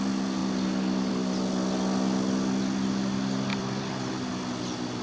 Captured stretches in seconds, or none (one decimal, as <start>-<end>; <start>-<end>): 0.0-3.5; 4.1-5.0